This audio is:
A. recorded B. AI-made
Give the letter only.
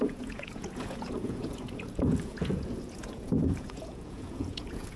B